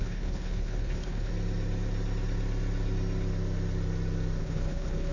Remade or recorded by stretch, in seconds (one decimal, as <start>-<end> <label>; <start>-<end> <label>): 0.0-1.3 remade; 1.3-4.4 recorded; 4.4-5.1 remade